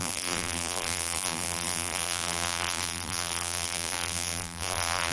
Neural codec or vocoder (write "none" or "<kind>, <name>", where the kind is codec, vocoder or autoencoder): vocoder, BigVGAN v2